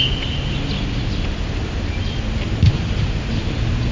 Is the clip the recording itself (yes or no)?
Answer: yes